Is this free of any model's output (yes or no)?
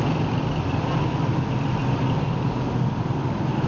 yes